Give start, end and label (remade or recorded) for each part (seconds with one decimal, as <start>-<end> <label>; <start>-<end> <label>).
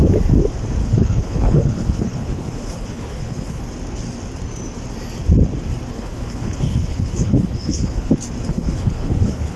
0.0-0.8 recorded; 0.8-3.6 remade; 3.6-5.9 recorded; 5.9-8.1 remade; 8.1-8.5 recorded; 8.5-9.6 remade